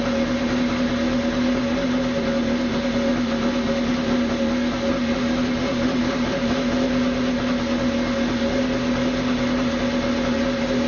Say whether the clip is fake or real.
real